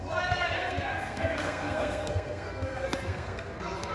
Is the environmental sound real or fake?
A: fake